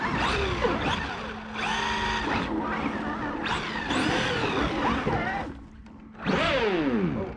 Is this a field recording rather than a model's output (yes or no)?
yes